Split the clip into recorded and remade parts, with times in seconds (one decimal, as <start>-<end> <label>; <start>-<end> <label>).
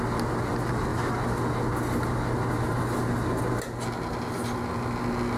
0.0-5.4 recorded